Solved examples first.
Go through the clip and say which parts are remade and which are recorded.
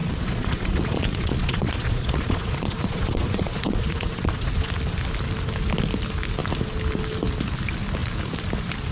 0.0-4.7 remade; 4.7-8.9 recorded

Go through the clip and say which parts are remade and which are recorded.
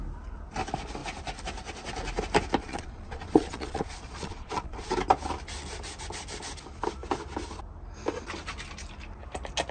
0.0-2.6 recorded; 2.6-4.9 remade; 4.9-9.7 recorded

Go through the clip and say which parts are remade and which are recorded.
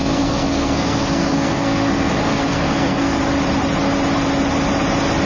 0.0-3.2 remade; 3.2-5.3 recorded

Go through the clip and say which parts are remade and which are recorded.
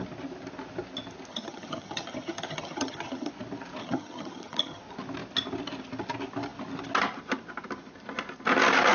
0.0-1.3 recorded; 1.3-3.3 remade; 3.3-3.8 recorded; 3.8-4.8 remade; 4.8-8.9 recorded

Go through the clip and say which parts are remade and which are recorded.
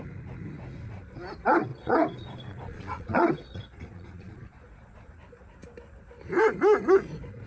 0.0-1.7 recorded; 1.7-5.1 remade; 5.1-7.5 recorded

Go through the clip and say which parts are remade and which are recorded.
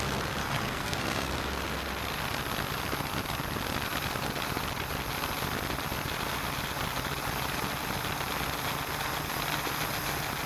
0.0-0.4 recorded; 0.4-1.3 remade; 1.3-10.5 recorded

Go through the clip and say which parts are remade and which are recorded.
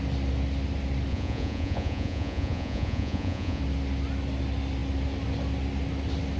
0.0-1.1 recorded; 1.1-3.6 remade; 3.6-6.4 recorded